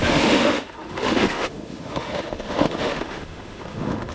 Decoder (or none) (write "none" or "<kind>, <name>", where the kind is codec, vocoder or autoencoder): autoencoder, DAC-VAE